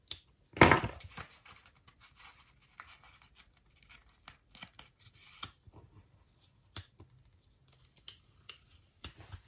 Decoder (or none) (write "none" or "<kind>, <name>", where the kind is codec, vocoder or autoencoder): none